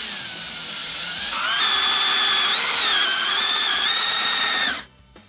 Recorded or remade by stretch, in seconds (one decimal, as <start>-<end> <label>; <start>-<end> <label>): 0.0-0.8 recorded; 0.8-1.4 remade; 1.4-3.1 recorded; 3.1-4.8 remade; 4.8-5.3 recorded